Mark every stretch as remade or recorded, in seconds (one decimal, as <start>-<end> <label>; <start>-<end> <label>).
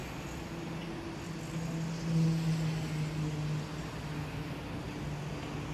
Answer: 0.0-5.7 recorded